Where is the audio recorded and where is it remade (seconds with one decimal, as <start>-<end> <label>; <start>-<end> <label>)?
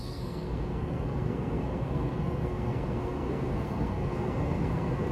0.0-5.1 remade